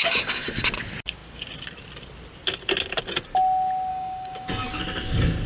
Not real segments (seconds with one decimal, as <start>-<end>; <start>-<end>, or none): 0.0-0.7; 3.9-4.8